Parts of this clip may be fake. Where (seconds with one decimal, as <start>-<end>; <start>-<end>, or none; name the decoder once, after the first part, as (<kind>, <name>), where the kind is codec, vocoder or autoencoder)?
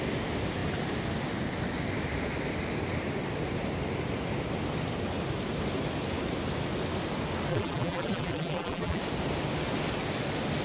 7.5-9.0 (vocoder, BigVGAN v2)